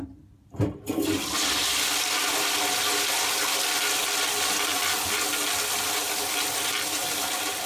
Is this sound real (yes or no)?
yes